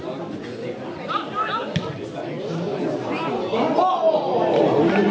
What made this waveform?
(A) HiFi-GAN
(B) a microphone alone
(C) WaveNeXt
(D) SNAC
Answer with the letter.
B